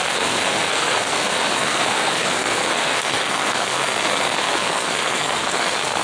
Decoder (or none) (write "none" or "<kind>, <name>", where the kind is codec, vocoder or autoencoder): codec, SNAC